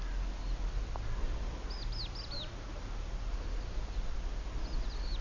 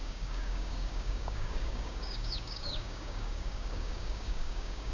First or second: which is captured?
first